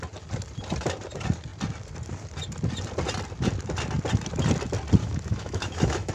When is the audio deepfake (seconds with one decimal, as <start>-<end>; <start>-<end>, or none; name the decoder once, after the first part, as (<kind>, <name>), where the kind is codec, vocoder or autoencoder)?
5.0-6.1 (autoencoder, DAC-VAE)